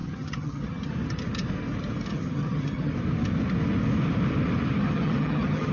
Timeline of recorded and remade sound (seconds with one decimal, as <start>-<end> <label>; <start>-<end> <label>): 0.0-0.9 remade; 0.9-2.1 recorded; 2.1-2.9 remade; 2.9-4.8 recorded; 4.8-5.7 remade